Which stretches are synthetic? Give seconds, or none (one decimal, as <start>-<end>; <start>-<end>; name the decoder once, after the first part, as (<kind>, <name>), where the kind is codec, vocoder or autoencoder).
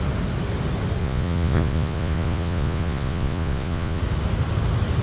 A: 1.0-4.0 (vocoder, Vocos)